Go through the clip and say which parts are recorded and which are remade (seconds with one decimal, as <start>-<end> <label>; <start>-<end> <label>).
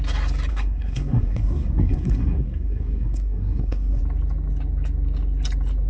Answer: 0.0-0.5 recorded; 0.5-4.0 remade; 4.0-5.9 recorded